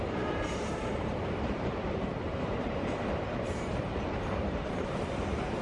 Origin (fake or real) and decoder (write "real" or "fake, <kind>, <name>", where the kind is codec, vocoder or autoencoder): fake, vocoder, BigVGAN v2